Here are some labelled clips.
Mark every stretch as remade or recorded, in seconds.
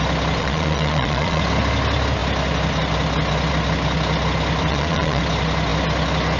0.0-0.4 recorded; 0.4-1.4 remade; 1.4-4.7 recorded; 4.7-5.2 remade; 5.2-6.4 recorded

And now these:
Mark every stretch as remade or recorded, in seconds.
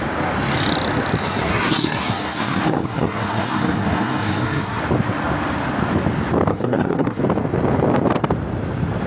0.0-1.2 recorded; 1.2-4.8 remade; 4.8-6.5 recorded; 6.5-7.2 remade; 7.2-9.1 recorded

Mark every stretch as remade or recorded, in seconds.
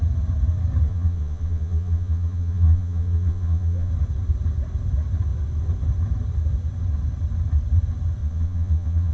0.0-0.9 recorded; 0.9-3.9 remade; 3.9-8.2 recorded; 8.2-9.1 remade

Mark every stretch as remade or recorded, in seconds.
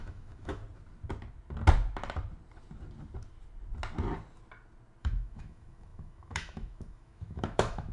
0.0-0.6 remade; 0.6-5.0 recorded; 5.0-7.9 remade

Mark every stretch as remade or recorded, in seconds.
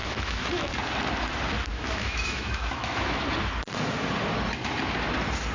0.0-0.7 remade; 0.7-1.7 recorded; 1.7-3.2 remade; 3.2-5.5 recorded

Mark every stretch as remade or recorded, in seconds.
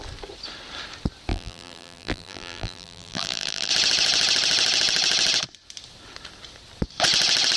0.0-1.3 recorded; 1.3-3.7 remade; 3.7-7.6 recorded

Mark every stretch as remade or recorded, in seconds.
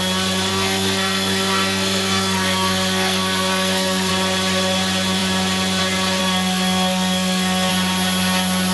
0.0-0.5 recorded; 0.5-4.1 remade; 4.1-6.2 recorded; 6.2-7.7 remade; 7.7-8.7 recorded